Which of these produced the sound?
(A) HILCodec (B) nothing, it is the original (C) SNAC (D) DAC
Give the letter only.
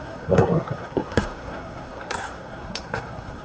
C